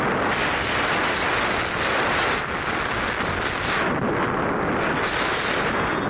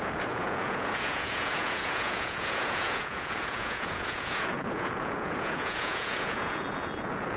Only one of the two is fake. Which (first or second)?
second